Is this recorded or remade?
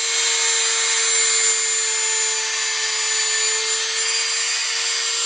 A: recorded